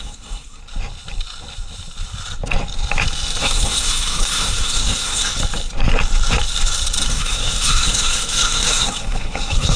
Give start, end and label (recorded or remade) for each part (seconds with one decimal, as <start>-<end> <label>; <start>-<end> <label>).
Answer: 0.0-0.6 remade; 0.6-3.4 recorded; 3.4-5.3 remade; 5.3-7.1 recorded; 7.1-9.8 remade